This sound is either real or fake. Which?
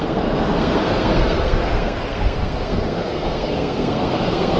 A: fake